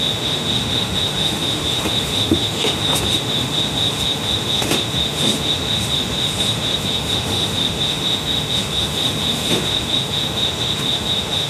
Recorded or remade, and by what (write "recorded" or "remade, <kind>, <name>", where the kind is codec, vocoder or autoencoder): remade, autoencoder, DAC-VAE